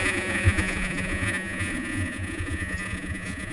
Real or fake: fake